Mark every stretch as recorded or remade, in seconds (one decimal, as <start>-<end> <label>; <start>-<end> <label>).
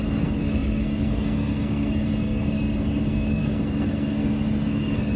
0.0-5.2 remade